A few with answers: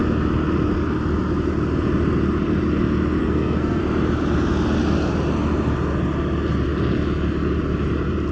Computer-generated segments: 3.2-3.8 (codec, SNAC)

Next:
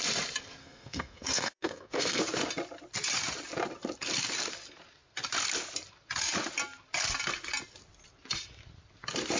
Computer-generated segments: 0.6-2.2 (codec, SNAC)

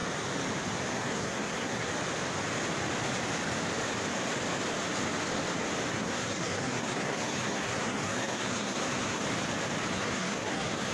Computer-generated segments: 0.9-1.9 (codec, SNAC); 5.9-9.2; 9.9-10.9

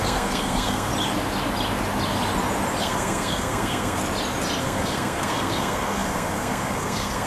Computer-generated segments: 0.0-0.9 (codec, SNAC); 2.8-4.0; 4.6-7.3

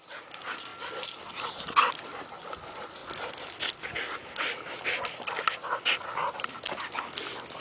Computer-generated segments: none